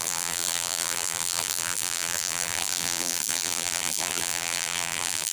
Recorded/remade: remade